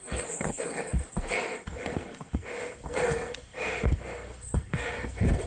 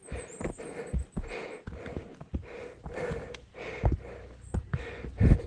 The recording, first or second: second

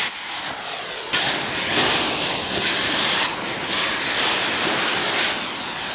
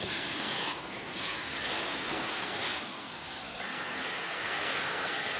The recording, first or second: first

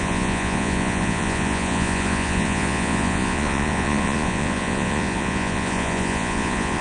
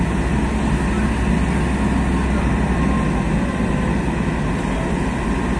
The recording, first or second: second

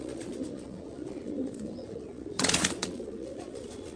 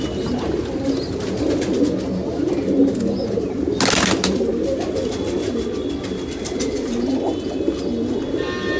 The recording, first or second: second